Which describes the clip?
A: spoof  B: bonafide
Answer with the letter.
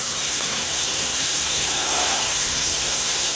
A